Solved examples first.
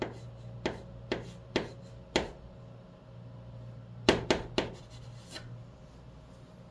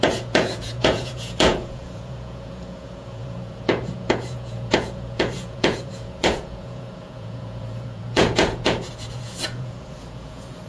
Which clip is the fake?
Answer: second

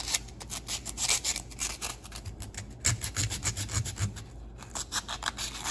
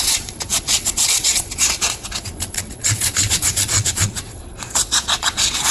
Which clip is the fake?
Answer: second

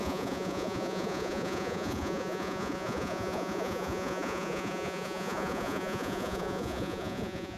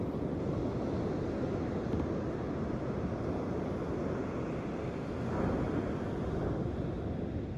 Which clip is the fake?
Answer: first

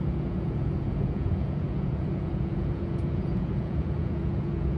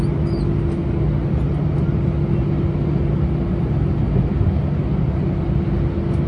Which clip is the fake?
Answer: first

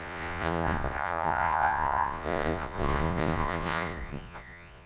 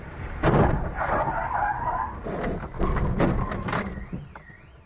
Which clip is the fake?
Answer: first